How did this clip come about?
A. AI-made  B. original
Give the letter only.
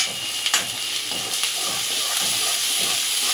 B